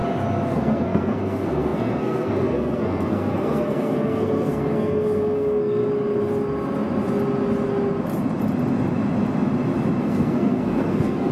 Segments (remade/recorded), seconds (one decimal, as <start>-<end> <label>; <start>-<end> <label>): 0.0-0.5 recorded; 0.5-5.8 remade; 5.8-10.0 recorded; 10.0-11.3 remade